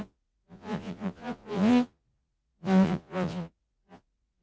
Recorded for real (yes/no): no